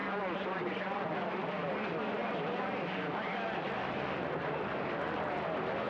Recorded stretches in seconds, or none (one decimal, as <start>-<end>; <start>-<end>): 0.0-5.9